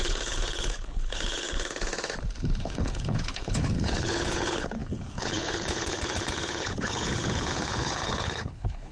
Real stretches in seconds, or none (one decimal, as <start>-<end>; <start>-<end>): 1.9-2.4